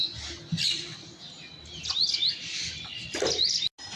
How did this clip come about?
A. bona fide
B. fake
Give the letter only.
A